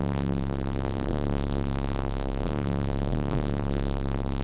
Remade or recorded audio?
remade